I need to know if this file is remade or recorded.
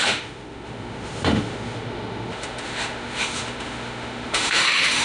remade